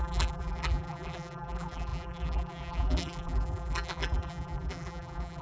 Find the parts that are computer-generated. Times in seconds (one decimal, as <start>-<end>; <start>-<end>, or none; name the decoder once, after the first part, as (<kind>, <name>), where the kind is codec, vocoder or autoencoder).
0.0-5.4 (vocoder, BigVGAN v2)